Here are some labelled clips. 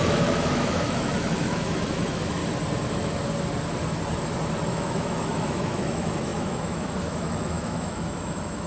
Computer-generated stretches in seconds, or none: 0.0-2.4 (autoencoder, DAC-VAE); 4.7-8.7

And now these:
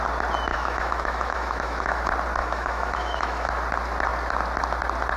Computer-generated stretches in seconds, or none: 0.5-2.0 (autoencoder, DAC-VAE); 2.4-3.5

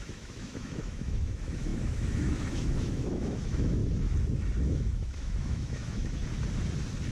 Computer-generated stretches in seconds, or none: 0.0-3.8 (autoencoder, DAC-VAE); 4.6-6.2

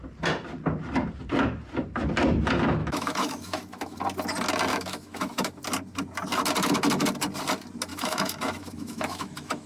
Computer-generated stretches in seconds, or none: 2.8-4.0 (autoencoder, DAC-VAE); 4.7-5.6; 7.9-9.7